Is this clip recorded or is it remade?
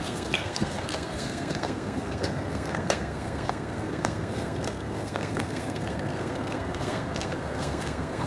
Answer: remade